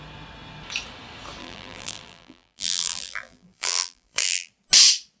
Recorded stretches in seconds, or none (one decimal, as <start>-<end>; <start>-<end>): 0.0-1.4; 4.5-5.2